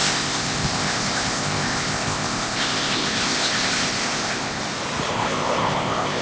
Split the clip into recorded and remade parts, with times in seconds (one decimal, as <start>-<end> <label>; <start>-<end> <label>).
0.0-4.6 remade; 4.6-5.1 recorded; 5.1-6.2 remade